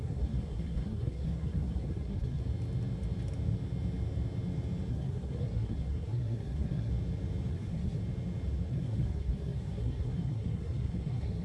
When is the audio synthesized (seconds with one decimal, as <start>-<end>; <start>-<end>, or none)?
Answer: 0.0-2.4; 4.9-6.9; 7.5-8.0; 8.7-11.4